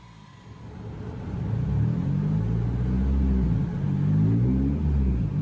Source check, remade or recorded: recorded